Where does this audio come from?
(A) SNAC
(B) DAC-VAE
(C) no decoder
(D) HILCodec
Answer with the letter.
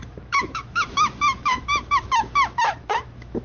B